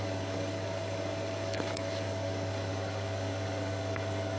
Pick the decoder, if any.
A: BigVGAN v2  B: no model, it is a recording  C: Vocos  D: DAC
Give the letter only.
D